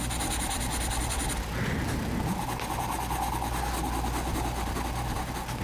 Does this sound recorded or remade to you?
recorded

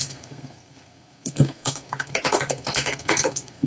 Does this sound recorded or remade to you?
remade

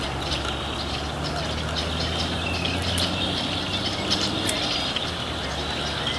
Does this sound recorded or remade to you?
recorded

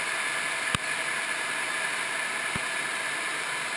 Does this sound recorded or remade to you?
recorded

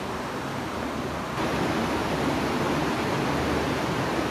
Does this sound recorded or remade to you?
recorded